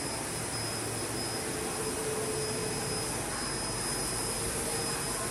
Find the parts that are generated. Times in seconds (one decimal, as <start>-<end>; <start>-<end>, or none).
none